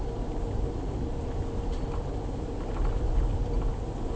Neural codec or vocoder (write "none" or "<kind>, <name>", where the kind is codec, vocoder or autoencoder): none